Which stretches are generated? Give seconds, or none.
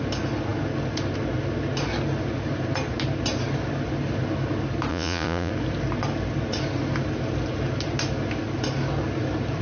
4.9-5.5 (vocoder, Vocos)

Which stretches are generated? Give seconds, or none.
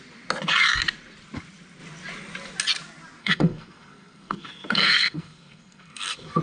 3.2-6.4 (codec, SNAC)